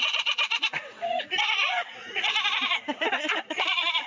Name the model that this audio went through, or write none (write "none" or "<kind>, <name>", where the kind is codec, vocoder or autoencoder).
vocoder, Vocos